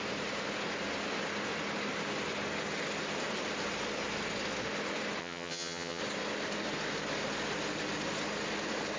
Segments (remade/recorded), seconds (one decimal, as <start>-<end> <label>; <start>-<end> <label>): 0.0-5.2 recorded; 5.2-6.0 remade; 6.0-9.0 recorded